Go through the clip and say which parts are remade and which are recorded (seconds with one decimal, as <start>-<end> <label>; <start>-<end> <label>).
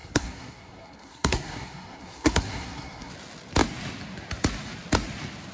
0.0-3.1 remade; 3.1-5.5 recorded